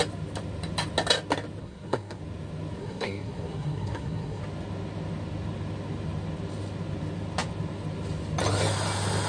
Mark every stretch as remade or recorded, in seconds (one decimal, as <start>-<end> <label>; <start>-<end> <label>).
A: 0.0-1.6 recorded; 1.6-2.2 remade; 2.2-2.8 recorded; 2.8-4.4 remade; 4.4-9.3 recorded